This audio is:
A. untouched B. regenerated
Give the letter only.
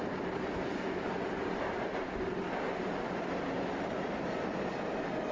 A